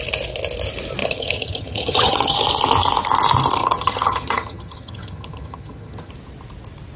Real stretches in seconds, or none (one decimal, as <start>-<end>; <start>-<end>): 0.0-1.0; 2.4-3.6; 6.1-7.0